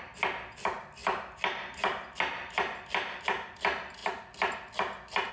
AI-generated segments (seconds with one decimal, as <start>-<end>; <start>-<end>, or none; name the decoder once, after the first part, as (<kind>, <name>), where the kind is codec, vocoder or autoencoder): none